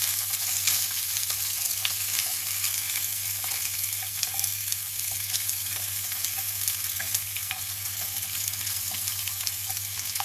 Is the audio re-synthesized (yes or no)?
yes